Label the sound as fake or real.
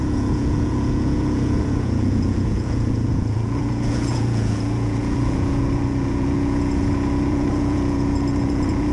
fake